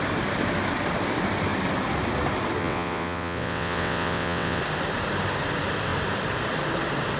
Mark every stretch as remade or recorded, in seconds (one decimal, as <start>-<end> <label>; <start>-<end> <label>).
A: 0.0-2.6 recorded; 2.6-4.6 remade; 4.6-7.2 recorded